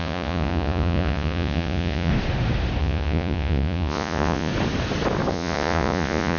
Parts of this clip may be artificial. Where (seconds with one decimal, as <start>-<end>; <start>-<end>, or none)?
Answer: 0.0-2.1; 2.8-4.5; 5.3-6.4

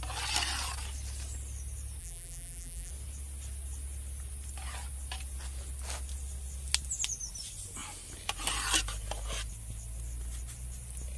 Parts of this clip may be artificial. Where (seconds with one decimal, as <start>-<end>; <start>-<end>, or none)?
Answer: 2.0-2.9

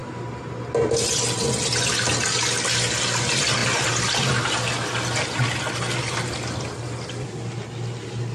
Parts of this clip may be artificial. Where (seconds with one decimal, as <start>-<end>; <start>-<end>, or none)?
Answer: none

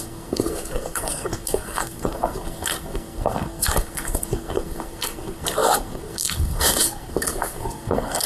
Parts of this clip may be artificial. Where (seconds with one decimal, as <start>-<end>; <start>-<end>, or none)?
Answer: 0.0-8.3

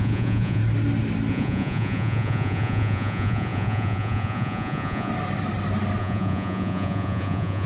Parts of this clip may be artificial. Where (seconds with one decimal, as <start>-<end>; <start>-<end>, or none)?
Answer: 0.0-0.6; 1.3-5.1; 6.0-7.7